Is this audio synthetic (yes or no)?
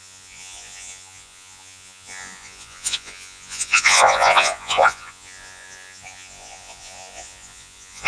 yes